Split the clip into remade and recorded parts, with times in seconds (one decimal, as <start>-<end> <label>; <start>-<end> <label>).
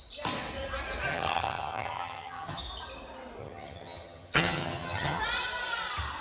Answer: 0.0-1.1 recorded; 1.1-2.6 remade; 2.6-3.4 recorded; 3.4-5.2 remade; 5.2-6.2 recorded